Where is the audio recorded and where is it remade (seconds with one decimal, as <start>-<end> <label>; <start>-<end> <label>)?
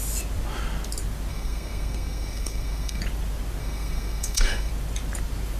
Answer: 0.0-1.3 recorded; 1.3-3.0 remade; 3.0-3.6 recorded; 3.6-4.7 remade; 4.7-5.6 recorded